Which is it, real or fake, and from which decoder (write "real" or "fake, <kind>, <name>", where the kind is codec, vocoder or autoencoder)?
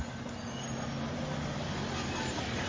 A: real